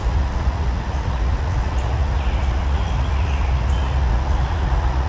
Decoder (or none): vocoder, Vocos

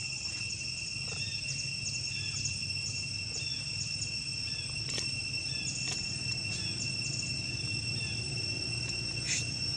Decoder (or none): none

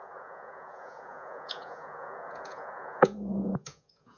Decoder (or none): vocoder, Vocos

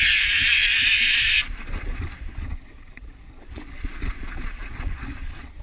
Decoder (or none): vocoder, Vocos